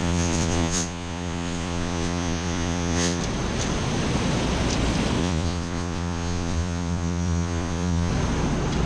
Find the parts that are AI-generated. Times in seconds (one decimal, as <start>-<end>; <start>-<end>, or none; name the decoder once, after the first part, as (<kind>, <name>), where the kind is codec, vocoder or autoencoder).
0.0-3.2 (vocoder, Vocos); 5.2-8.1